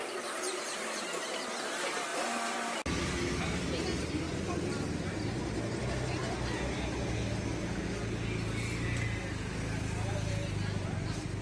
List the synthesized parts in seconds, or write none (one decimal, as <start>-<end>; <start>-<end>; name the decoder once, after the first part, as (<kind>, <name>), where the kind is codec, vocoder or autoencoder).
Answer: none